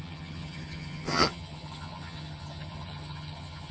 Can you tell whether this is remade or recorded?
remade